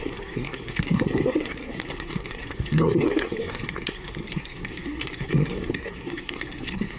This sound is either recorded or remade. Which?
remade